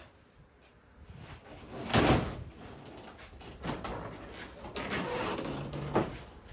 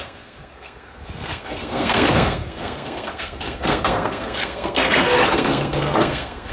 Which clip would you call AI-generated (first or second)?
second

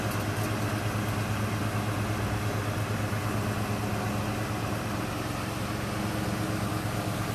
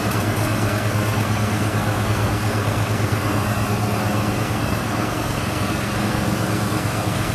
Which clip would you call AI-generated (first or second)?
second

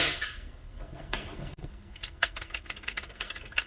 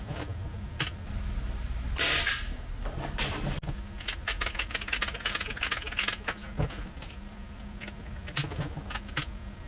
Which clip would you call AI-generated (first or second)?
first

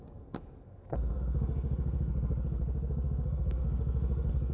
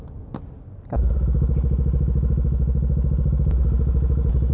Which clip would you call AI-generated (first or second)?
first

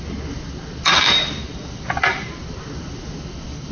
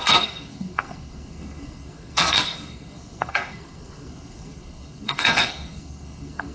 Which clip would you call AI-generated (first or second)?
second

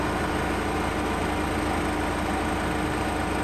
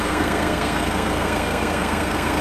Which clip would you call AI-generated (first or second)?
second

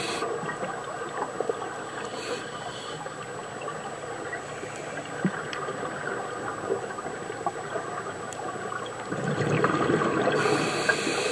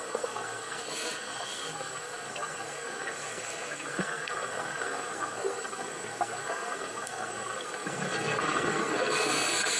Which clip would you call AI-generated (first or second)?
second